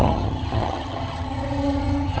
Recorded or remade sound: remade